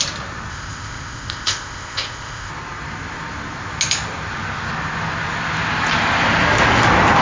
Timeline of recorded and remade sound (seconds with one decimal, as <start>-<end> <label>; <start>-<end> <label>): 0.0-0.5 recorded; 0.5-2.5 remade; 2.5-7.2 recorded

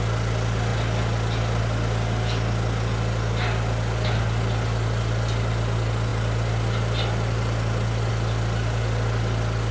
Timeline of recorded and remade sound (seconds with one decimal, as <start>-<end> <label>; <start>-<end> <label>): 0.0-9.7 recorded

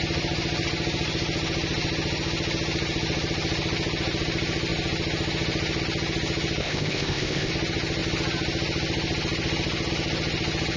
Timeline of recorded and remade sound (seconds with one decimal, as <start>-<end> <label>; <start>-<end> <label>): 0.0-6.6 recorded; 6.6-7.5 remade; 7.5-10.8 recorded

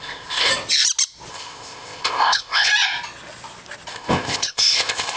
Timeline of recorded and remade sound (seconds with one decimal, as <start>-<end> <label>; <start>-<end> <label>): 0.0-0.5 remade; 0.5-1.3 recorded; 1.3-2.7 remade; 2.7-3.9 recorded; 3.9-5.2 remade